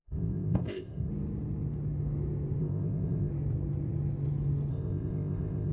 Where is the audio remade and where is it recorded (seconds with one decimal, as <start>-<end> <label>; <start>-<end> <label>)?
0.0-1.1 remade; 1.1-2.6 recorded; 2.6-3.3 remade; 3.3-4.7 recorded; 4.7-5.7 remade